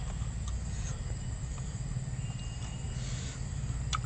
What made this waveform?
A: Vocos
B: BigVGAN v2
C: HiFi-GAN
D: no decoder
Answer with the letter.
D